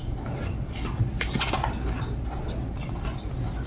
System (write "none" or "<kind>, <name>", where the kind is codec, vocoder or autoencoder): none